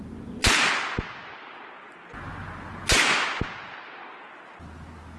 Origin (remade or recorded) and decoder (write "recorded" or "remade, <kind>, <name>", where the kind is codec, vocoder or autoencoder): recorded